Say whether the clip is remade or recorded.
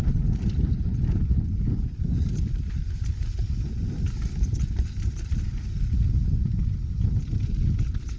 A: recorded